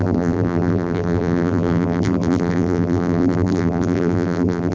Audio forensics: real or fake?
fake